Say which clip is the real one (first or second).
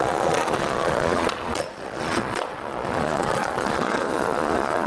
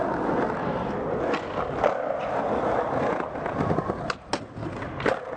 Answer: second